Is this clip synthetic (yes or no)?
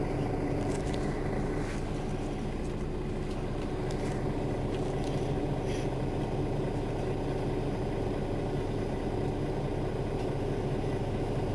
no